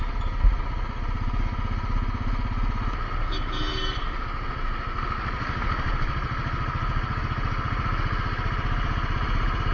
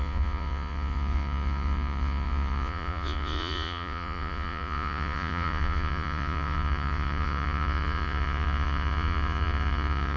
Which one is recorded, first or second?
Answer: first